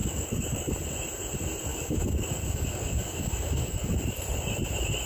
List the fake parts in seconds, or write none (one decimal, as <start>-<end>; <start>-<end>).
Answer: 0.0-0.7; 1.7-3.9